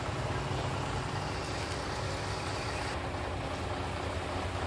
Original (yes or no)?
yes